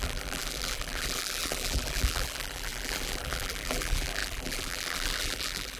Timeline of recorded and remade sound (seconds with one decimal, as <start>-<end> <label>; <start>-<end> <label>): 0.0-5.8 remade